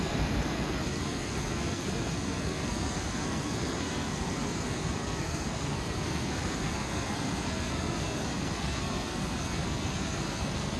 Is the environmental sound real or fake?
fake